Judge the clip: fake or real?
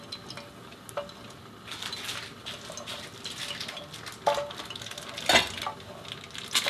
real